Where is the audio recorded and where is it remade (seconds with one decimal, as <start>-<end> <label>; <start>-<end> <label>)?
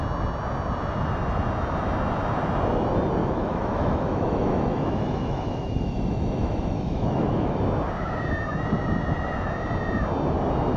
0.0-3.2 recorded; 3.2-7.6 remade; 7.6-10.8 recorded